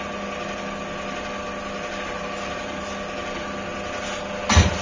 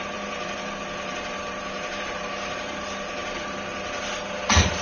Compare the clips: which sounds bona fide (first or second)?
first